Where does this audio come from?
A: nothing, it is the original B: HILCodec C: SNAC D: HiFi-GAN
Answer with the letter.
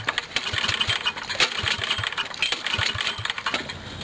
A